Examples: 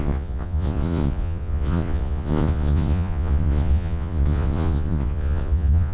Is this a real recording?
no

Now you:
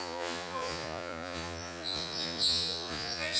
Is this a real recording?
no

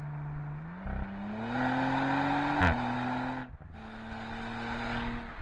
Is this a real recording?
yes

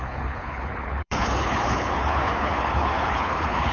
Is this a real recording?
no